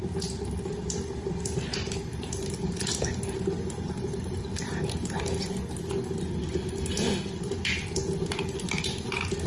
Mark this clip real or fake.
real